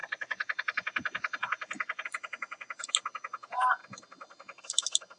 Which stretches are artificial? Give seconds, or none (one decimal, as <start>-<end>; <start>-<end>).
none